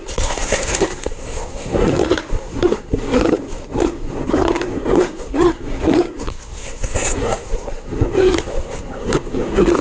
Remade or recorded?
remade